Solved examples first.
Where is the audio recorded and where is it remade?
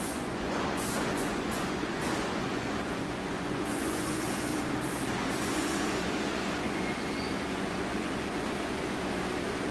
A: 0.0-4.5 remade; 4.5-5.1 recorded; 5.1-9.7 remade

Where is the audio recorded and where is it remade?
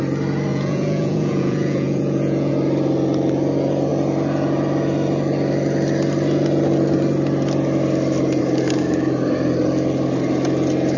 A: 0.0-0.5 recorded; 0.5-2.5 remade; 2.5-11.0 recorded